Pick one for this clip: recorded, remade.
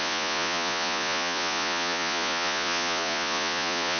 remade